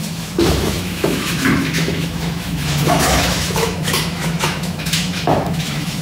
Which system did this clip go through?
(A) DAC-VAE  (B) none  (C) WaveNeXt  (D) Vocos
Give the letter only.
A